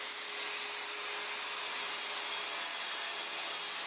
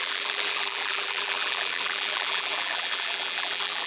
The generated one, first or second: second